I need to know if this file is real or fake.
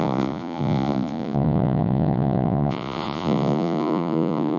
fake